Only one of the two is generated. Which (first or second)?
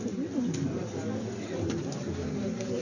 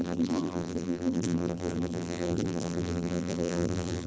second